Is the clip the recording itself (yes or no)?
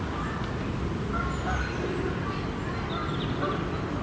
yes